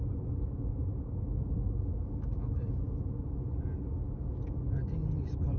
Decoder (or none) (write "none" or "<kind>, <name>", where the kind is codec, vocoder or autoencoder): none